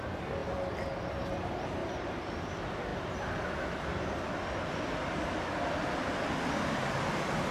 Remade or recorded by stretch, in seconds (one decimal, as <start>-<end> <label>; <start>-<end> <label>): 0.0-1.8 recorded; 1.8-2.5 remade; 2.5-7.5 recorded

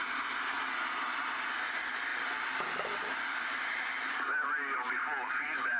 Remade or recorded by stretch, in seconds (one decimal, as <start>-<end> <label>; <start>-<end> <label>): 0.0-5.8 recorded

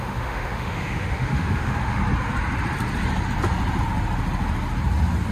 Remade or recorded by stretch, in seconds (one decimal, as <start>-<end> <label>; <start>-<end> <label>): 0.0-2.0 remade; 2.0-5.3 recorded

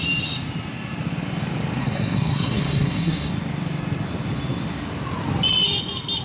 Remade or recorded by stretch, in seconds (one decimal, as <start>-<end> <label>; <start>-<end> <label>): 0.0-1.8 recorded; 1.8-3.3 remade; 3.3-6.2 recorded

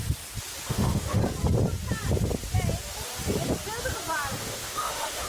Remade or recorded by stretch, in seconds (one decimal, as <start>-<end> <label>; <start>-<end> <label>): 0.0-0.7 recorded; 0.7-1.2 remade; 1.2-4.4 recorded; 4.4-5.3 remade